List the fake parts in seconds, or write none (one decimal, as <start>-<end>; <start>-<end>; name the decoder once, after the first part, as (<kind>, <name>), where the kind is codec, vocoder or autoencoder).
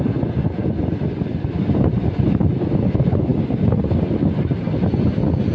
none